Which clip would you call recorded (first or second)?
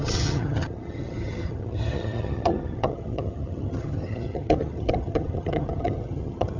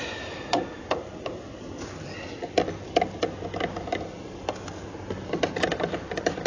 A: second